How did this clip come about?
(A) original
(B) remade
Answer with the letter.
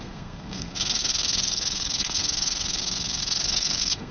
B